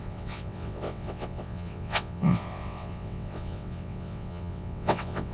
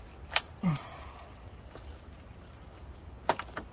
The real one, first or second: second